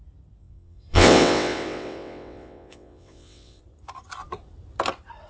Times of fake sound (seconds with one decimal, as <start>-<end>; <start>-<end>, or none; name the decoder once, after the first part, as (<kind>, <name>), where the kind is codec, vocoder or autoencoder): 0.4-3.6 (vocoder, WaveNeXt)